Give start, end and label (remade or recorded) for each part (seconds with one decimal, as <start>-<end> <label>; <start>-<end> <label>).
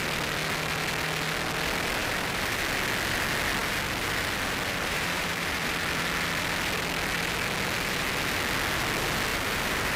0.0-2.0 recorded; 2.0-2.6 remade; 2.6-3.6 recorded; 3.6-5.9 remade; 5.9-9.3 recorded; 9.3-10.0 remade